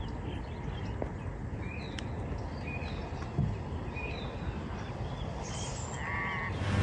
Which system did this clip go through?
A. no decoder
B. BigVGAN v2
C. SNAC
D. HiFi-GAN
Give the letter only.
A